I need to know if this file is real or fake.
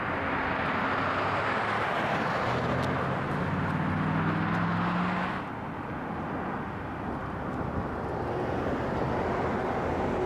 real